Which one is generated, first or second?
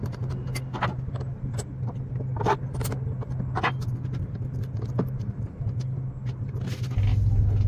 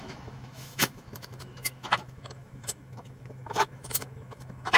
second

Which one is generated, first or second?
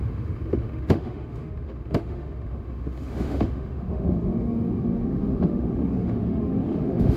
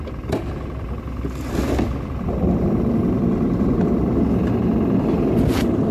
first